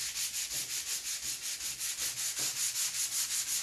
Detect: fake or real real